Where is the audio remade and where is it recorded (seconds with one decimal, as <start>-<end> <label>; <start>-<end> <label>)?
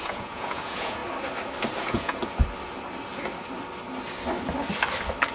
0.0-1.0 remade; 1.0-1.8 recorded; 1.8-2.2 remade; 2.2-5.3 recorded